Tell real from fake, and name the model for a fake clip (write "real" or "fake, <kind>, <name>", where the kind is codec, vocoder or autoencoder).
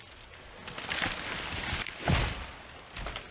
real